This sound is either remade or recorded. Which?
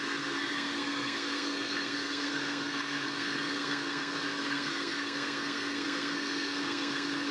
remade